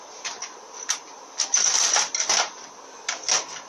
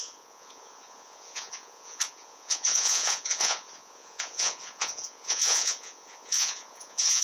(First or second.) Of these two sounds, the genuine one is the first